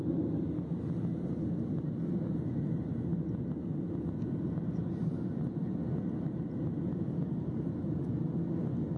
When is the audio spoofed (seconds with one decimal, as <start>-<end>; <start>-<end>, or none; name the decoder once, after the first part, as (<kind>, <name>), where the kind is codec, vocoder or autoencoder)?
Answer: 4.6-8.1 (vocoder, BigVGAN v2)